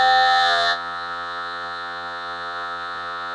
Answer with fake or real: fake